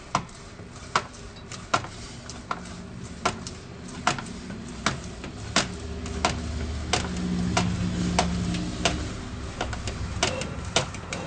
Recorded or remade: recorded